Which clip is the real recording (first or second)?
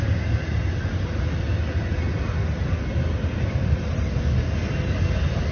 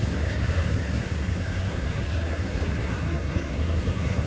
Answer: first